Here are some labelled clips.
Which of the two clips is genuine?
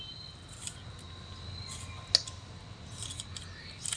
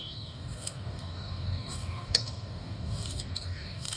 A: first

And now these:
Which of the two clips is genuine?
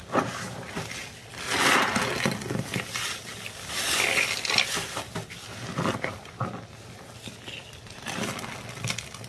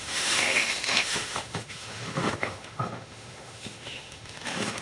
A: first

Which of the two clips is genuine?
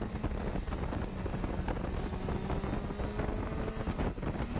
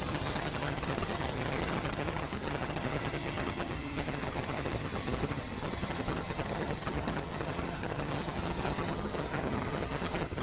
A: first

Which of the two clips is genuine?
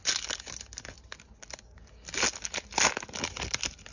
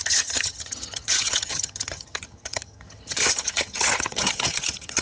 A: first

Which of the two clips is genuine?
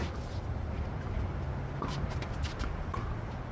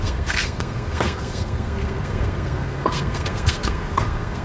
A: first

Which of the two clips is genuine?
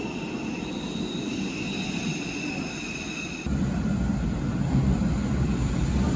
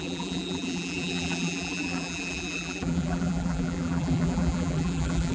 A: first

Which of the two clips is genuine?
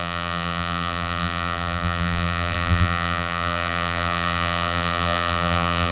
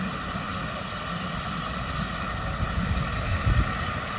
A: second